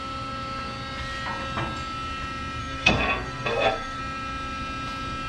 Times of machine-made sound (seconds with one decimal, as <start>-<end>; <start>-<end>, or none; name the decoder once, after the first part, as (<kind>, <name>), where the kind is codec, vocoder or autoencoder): 2.6-4.0 (codec, SNAC)

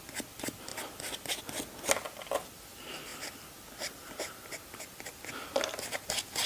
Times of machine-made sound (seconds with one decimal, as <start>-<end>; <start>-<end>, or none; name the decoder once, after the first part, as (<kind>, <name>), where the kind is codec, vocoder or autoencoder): none

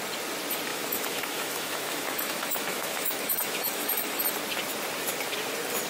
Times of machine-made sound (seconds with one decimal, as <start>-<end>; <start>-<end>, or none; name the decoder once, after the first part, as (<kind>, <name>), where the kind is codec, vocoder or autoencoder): 0.7-4.2 (autoencoder, DAC-VAE)

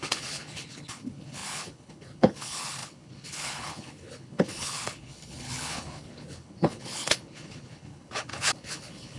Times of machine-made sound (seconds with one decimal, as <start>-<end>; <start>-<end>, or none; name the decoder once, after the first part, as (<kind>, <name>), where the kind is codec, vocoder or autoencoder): 0.0-9.2 (codec, HILCodec)